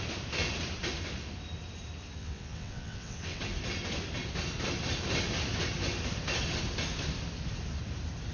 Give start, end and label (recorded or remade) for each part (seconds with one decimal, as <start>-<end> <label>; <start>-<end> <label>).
0.0-2.2 recorded; 2.2-3.4 remade; 3.4-8.3 recorded